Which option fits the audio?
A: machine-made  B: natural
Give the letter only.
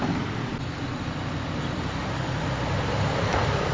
B